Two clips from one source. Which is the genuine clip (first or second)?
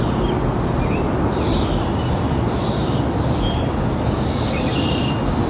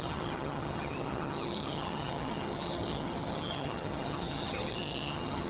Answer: first